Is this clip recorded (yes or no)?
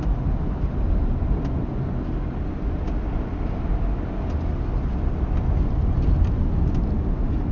yes